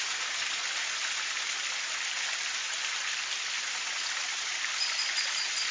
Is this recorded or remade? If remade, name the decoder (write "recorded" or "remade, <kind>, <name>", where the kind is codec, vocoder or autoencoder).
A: recorded